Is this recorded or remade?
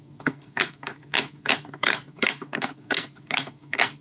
remade